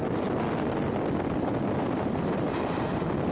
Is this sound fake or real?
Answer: real